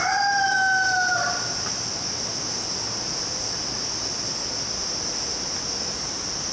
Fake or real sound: real